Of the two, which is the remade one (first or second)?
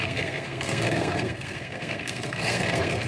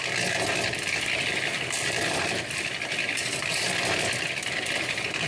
first